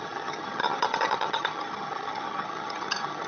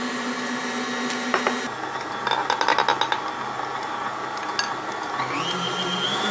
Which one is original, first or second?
second